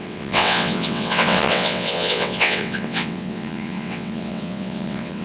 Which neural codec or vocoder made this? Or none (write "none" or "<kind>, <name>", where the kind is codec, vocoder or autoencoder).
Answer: vocoder, WaveNeXt